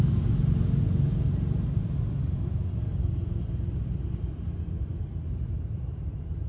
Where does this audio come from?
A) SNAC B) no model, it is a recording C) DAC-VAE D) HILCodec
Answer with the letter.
B